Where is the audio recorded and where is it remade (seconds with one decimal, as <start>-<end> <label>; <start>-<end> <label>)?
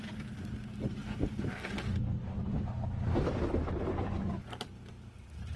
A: 0.0-1.0 recorded; 1.0-1.8 remade; 1.8-5.6 recorded